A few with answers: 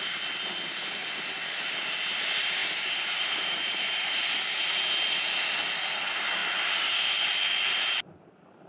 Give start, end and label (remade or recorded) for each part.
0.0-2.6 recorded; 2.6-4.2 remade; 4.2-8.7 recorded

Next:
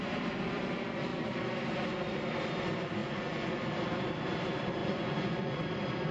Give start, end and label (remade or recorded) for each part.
0.0-3.0 recorded; 3.0-3.6 remade; 3.6-4.8 recorded; 4.8-5.6 remade; 5.6-6.1 recorded

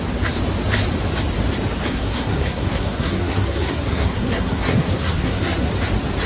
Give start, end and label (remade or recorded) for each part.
0.0-1.9 recorded; 1.9-5.7 remade; 5.7-6.3 recorded

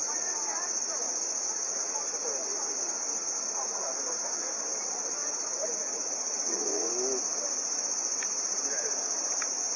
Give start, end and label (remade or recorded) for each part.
0.0-2.0 remade; 2.0-2.4 recorded; 2.4-3.8 remade; 3.8-5.2 recorded; 5.2-6.9 remade; 6.9-9.8 recorded

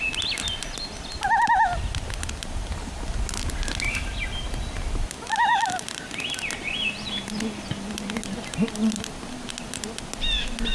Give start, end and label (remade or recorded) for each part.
0.0-10.7 recorded

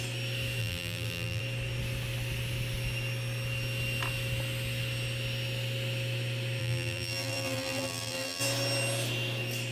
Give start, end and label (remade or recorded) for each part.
0.0-0.6 recorded; 0.6-1.4 remade; 1.4-6.6 recorded; 6.6-8.4 remade; 8.4-9.7 recorded

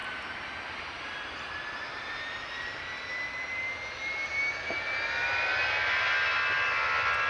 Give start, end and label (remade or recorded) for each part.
0.0-7.3 recorded